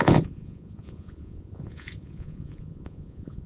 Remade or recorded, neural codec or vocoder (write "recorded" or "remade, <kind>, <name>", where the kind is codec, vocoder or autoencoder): remade, vocoder, Vocos